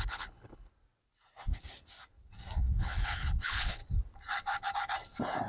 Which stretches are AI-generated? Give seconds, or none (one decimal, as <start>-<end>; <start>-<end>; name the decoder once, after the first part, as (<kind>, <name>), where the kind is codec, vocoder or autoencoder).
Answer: 0.0-0.7 (codec, HILCodec); 2.8-3.8

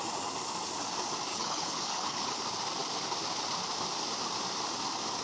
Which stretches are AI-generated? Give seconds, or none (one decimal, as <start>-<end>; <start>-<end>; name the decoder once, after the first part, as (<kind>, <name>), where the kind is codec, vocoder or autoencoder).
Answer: 1.3-2.4 (codec, HILCodec)